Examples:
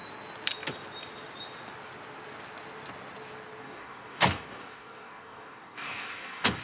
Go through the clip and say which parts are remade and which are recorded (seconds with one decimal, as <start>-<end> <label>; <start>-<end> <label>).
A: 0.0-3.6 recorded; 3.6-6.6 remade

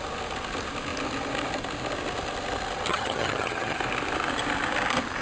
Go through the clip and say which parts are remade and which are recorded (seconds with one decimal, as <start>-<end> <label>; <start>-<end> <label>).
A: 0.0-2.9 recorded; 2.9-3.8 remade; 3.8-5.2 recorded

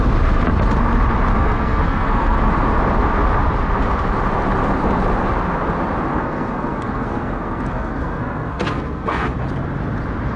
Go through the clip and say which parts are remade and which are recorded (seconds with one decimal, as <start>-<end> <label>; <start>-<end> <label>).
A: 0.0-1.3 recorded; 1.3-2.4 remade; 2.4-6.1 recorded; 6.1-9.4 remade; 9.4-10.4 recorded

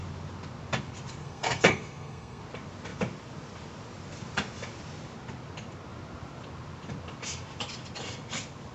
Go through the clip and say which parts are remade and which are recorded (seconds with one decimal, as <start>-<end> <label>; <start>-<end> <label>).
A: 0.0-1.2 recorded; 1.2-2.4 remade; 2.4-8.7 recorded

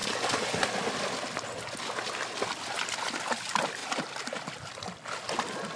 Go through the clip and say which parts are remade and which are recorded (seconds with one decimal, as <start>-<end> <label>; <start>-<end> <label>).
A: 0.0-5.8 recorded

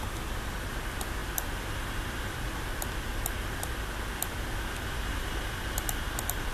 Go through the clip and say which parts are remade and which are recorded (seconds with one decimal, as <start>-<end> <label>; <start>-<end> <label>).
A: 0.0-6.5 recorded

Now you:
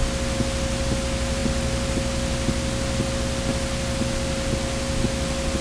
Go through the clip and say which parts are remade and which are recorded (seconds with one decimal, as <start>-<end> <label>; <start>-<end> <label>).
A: 0.0-5.6 recorded